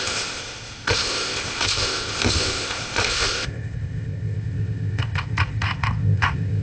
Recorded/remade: remade